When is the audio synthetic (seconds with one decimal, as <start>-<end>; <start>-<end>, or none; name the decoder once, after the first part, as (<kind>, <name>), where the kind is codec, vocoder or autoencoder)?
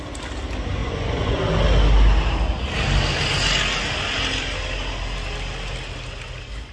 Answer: 0.8-1.4 (vocoder, Vocos)